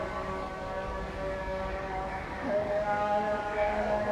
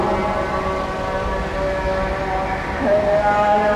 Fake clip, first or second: first